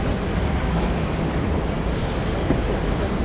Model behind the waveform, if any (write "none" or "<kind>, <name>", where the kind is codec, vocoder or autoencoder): none